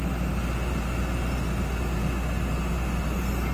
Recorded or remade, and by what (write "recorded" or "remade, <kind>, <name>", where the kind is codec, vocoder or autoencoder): recorded